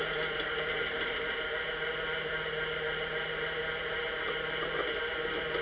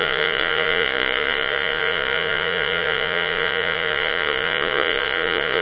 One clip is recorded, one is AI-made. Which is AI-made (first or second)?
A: second